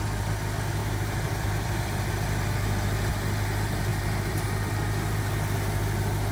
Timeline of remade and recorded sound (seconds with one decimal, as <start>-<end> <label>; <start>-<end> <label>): 0.0-0.8 recorded; 0.8-2.1 remade; 2.1-3.9 recorded; 3.9-4.7 remade; 4.7-6.3 recorded